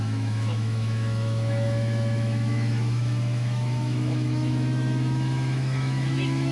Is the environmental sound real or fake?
fake